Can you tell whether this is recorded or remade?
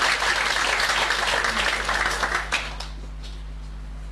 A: recorded